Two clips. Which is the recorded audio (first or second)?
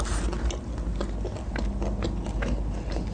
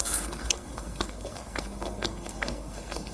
first